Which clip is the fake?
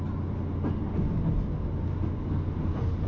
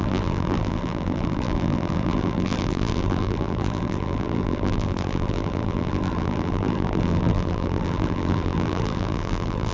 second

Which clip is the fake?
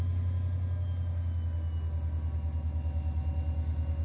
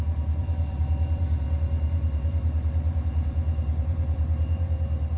second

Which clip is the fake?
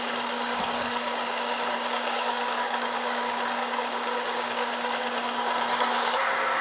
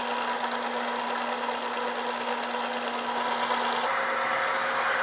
first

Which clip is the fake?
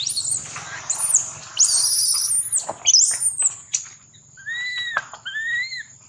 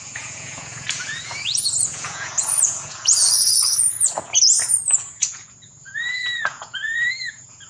second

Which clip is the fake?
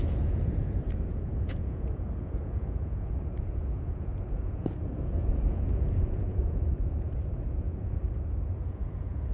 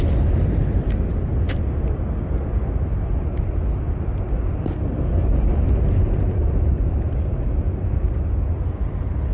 first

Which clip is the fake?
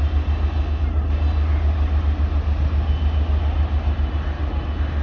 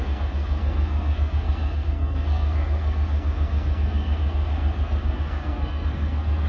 second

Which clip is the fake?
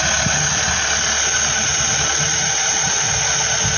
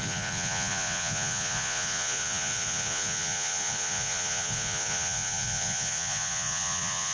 second